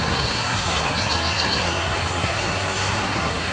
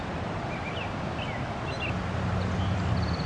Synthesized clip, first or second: first